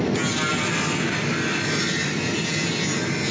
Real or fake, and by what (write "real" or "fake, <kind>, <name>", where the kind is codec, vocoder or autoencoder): real